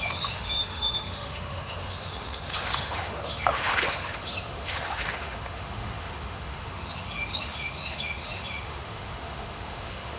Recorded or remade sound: remade